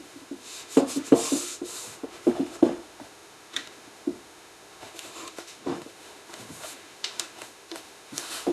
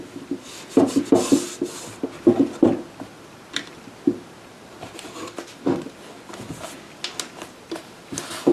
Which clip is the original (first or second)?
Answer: second